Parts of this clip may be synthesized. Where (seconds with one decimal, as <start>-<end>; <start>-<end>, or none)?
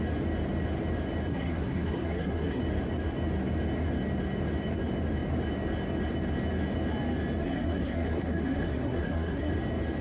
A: 1.3-2.6; 7.4-9.5